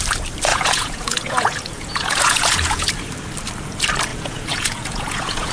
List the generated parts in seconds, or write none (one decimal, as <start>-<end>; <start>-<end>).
0.5-2.9; 4.1-5.5